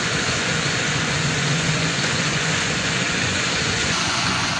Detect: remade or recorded remade